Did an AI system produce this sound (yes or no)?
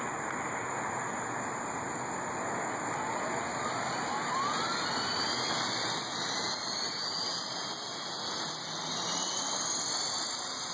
no